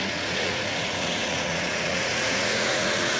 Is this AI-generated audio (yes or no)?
yes